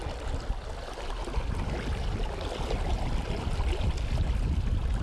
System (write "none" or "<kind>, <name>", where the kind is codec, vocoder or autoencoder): none